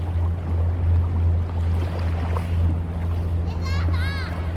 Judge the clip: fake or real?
real